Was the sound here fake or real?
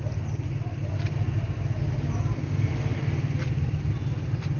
real